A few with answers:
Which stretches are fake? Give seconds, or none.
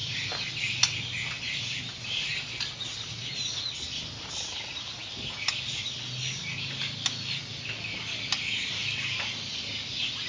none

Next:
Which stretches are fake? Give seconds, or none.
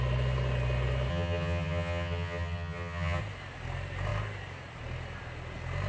1.1-3.2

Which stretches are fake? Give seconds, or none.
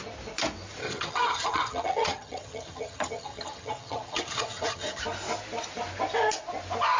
0.8-5.0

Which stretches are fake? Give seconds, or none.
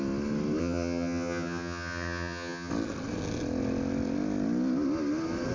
0.6-2.7